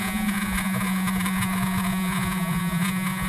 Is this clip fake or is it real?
fake